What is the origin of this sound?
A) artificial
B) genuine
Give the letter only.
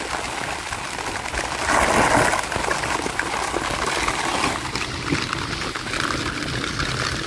B